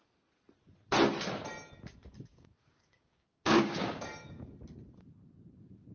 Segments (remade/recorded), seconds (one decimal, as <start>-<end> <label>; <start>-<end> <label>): 0.0-2.3 recorded; 2.3-4.5 remade; 4.5-5.9 recorded

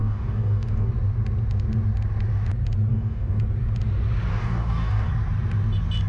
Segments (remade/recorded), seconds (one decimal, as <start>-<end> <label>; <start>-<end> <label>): 0.0-0.9 remade; 0.9-2.9 recorded; 2.9-3.4 remade; 3.4-4.3 recorded; 4.3-5.1 remade; 5.1-6.1 recorded

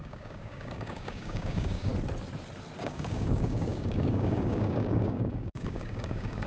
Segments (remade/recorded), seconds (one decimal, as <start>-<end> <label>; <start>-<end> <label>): 0.0-1.9 remade; 1.9-2.8 recorded; 2.8-6.5 remade

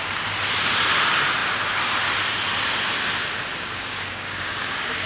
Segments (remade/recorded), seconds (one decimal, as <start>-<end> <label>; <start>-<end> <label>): 0.0-3.5 recorded; 3.5-5.1 remade

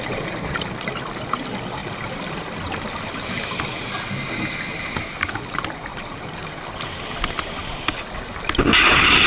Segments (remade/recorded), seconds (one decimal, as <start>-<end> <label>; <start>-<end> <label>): 0.0-9.3 recorded

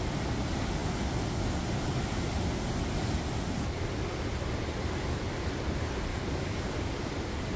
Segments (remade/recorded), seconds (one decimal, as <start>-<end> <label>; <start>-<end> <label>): 0.0-6.1 recorded; 6.1-7.1 remade; 7.1-7.6 recorded